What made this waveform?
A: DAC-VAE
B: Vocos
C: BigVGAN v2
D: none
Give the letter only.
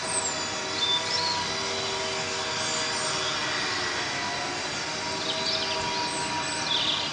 D